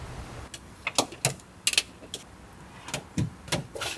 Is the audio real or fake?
real